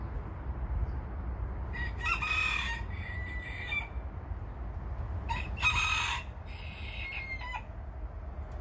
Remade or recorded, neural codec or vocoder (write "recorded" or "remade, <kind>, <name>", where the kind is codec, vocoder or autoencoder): recorded